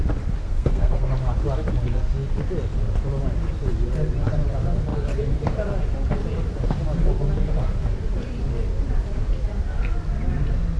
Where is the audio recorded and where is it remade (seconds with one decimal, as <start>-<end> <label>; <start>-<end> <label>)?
0.0-0.4 recorded; 0.4-1.1 remade; 1.1-10.8 recorded